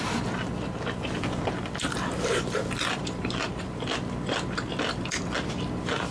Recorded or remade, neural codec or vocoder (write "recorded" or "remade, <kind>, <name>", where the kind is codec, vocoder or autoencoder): recorded